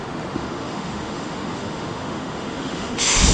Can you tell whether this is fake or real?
fake